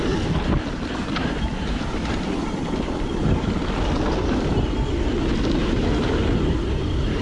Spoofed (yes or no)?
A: no